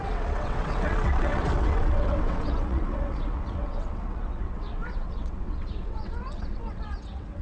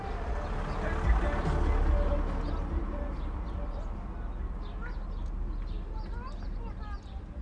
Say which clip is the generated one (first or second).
first